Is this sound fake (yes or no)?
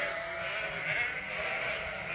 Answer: no